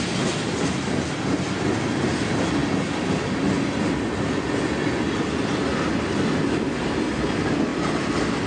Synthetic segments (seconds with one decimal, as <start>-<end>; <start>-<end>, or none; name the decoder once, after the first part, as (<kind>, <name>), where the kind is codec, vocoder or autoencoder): none